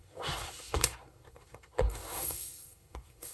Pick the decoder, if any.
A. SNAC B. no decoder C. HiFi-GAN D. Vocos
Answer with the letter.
A